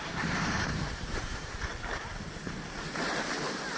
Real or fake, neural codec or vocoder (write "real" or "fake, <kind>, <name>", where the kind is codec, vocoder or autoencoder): fake, vocoder, BigVGAN v2